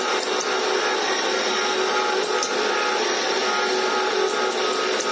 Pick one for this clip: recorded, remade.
recorded